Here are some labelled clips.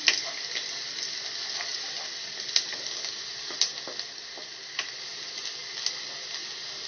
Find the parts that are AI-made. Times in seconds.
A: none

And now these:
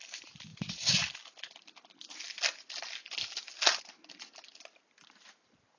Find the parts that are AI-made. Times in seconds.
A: none

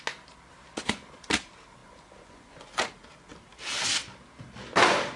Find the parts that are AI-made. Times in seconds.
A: 1.8-2.9 (vocoder, Vocos)

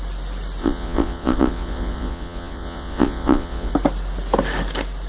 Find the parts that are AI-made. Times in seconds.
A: 0.6-3.7 (vocoder, Vocos)